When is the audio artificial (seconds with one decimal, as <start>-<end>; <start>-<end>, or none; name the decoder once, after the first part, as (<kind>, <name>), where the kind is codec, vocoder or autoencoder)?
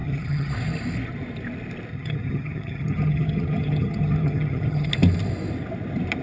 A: 0.0-0.5 (vocoder, HiFi-GAN); 1.9-4.9